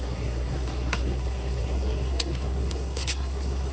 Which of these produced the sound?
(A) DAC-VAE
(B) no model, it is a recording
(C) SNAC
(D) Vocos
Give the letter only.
C